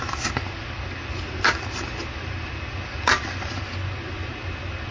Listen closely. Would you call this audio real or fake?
real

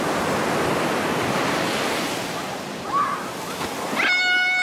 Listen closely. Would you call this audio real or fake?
real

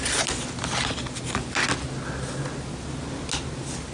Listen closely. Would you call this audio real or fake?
real